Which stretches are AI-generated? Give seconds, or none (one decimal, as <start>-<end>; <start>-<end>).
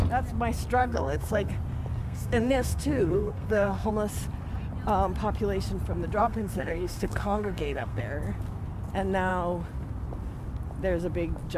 0.8-1.5; 2.0-3.9; 6.2-8.0